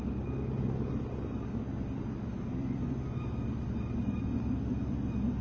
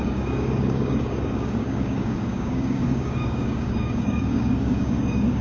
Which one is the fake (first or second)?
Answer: second